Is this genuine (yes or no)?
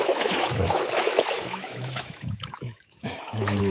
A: no